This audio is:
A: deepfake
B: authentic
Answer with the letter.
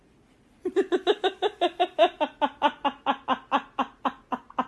B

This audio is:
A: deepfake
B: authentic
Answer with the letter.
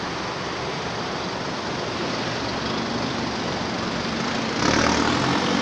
B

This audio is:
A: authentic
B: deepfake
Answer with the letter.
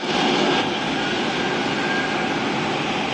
A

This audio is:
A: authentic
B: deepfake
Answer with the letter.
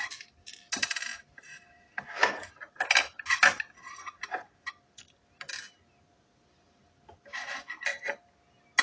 A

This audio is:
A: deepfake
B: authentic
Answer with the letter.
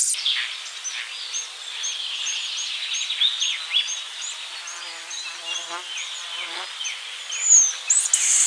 B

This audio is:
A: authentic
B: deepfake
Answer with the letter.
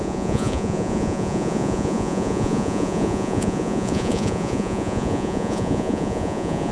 B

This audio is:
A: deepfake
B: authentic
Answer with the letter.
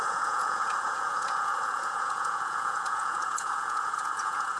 A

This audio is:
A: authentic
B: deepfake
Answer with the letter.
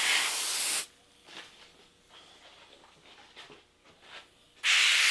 A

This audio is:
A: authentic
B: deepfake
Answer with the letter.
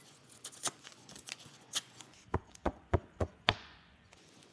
B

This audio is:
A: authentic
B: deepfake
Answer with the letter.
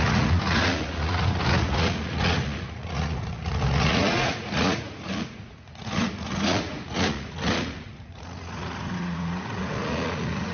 B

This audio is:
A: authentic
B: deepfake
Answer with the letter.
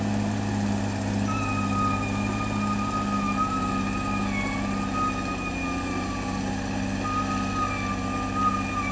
A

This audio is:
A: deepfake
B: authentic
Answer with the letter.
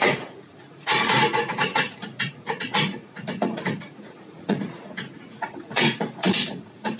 A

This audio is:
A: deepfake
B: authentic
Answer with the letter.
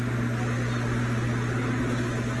B